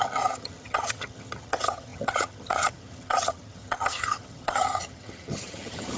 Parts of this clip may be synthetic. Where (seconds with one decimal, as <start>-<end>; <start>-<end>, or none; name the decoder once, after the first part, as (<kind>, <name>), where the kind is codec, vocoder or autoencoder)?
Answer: 0.0-6.0 (vocoder, HiFi-GAN)